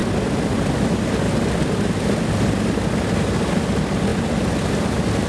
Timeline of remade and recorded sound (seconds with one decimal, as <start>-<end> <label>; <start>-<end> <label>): 0.0-5.3 recorded